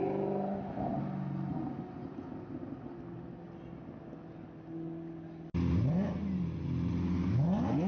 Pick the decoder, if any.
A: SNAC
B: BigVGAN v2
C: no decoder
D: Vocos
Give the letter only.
C